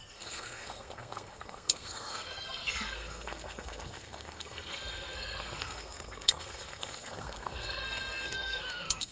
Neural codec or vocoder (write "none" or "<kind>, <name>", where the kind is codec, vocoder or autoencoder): codec, SNAC